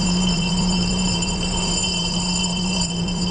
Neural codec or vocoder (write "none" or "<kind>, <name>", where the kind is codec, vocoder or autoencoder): vocoder, BigVGAN v2